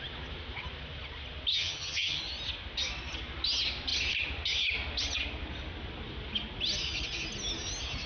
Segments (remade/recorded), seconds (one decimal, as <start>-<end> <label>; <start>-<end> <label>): 0.0-1.5 recorded; 1.5-2.2 remade; 2.2-8.1 recorded